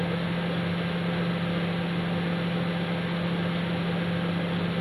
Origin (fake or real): real